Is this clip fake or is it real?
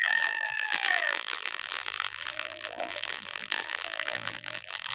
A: fake